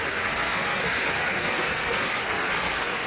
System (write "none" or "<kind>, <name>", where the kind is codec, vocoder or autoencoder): codec, SNAC